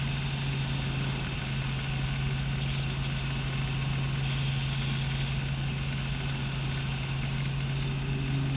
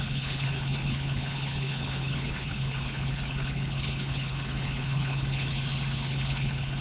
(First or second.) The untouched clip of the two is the first